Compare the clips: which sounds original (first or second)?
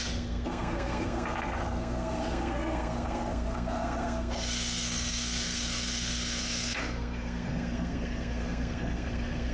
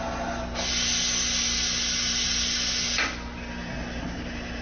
second